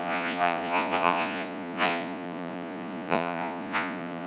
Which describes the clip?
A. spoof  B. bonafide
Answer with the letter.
A